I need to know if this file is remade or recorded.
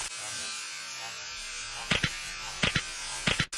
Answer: recorded